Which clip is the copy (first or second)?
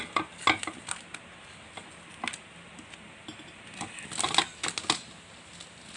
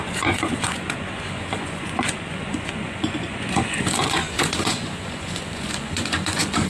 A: second